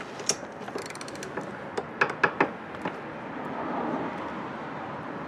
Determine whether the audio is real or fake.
real